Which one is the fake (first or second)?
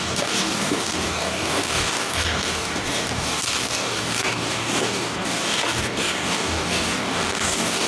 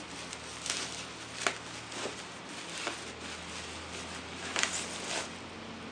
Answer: first